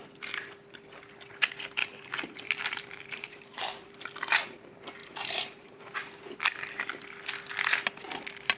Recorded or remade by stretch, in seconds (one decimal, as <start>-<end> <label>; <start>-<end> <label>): 0.0-1.8 recorded; 1.8-3.6 remade; 3.6-5.0 recorded; 5.0-5.8 remade; 5.8-8.6 recorded

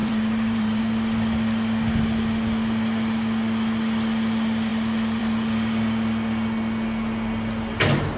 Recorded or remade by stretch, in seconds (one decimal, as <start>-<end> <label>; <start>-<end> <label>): 0.0-0.8 remade; 0.8-8.2 recorded